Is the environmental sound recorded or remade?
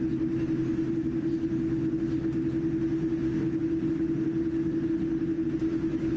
recorded